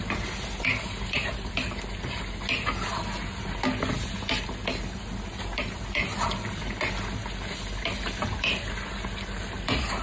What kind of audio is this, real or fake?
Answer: real